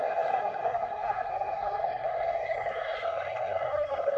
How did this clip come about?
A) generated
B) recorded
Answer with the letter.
A